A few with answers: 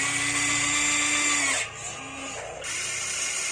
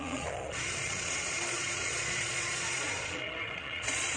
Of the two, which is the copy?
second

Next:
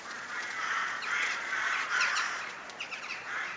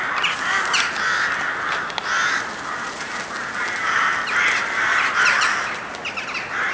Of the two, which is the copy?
first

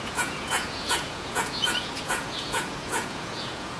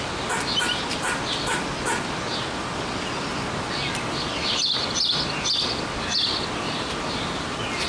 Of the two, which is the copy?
first